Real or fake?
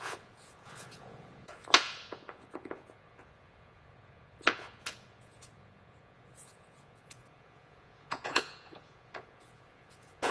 fake